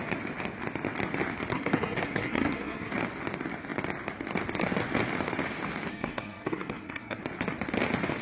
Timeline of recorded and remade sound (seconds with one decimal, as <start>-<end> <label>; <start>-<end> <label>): 0.0-1.5 recorded; 1.5-2.9 remade; 2.9-5.9 recorded; 5.9-7.2 remade; 7.2-8.2 recorded